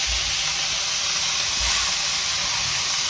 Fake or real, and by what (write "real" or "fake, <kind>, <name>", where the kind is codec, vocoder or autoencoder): real